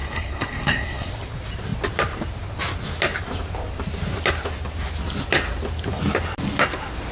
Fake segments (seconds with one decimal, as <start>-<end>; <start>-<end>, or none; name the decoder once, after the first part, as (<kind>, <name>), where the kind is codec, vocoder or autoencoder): 0.0-1.1 (codec, SNAC)